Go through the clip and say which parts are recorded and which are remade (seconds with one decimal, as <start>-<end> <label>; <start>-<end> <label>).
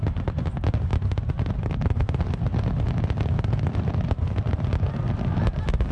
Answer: 0.0-5.9 recorded